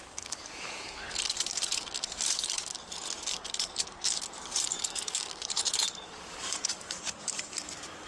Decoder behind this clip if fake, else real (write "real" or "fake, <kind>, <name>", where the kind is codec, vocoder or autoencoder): fake, codec, DAC